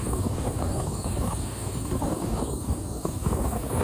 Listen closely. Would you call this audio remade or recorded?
remade